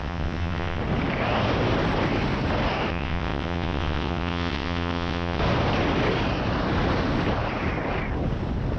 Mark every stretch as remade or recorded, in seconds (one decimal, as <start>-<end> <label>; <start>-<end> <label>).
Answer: 0.0-0.8 remade; 0.8-2.9 recorded; 2.9-5.4 remade; 5.4-8.8 recorded